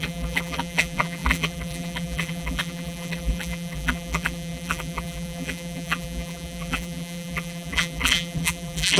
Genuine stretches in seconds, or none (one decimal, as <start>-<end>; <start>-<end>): none